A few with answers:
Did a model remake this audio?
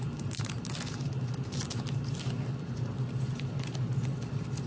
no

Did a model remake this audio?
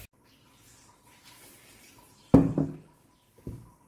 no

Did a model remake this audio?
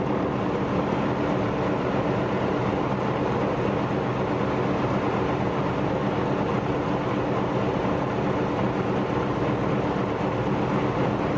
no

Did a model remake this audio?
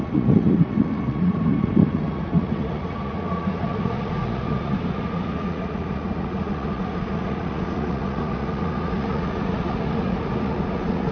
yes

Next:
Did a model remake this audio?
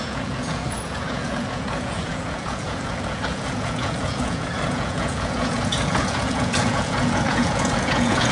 yes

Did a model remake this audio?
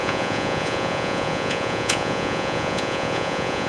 yes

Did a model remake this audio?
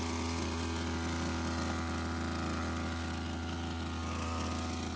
no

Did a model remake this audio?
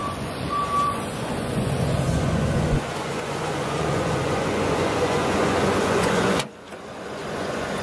yes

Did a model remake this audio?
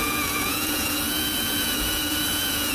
yes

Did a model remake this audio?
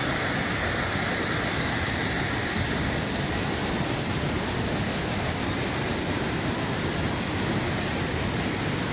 no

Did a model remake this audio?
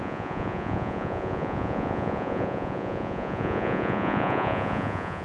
yes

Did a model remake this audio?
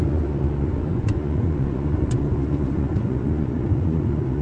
yes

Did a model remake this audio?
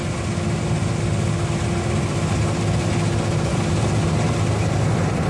no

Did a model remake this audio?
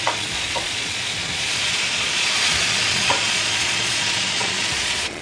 yes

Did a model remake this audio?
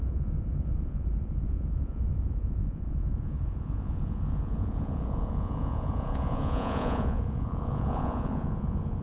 yes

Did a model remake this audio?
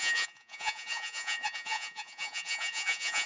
yes